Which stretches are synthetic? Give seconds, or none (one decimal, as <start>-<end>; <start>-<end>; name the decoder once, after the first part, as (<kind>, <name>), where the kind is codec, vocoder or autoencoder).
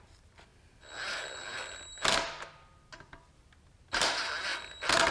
none